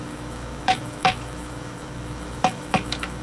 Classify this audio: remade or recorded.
remade